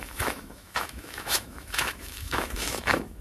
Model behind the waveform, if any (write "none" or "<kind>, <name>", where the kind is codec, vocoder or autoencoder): autoencoder, DAC-VAE